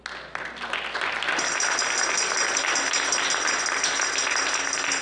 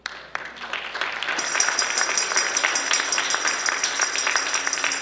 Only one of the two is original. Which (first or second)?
first